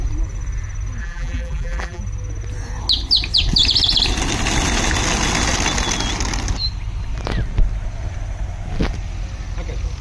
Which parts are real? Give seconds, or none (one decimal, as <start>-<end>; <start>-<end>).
0.0-1.0; 2.0-10.0